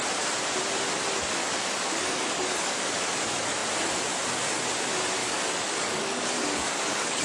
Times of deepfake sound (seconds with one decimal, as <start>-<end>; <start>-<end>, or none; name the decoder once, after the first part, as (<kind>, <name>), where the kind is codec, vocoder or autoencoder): 1.4-2.9 (codec, DAC); 5.2-7.2